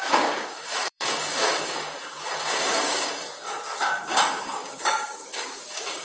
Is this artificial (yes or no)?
yes